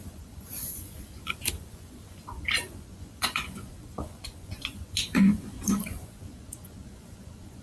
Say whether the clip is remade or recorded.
remade